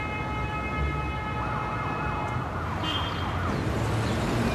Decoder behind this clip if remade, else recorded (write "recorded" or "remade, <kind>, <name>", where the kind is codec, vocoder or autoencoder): recorded